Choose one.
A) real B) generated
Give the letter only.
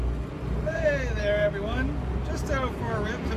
A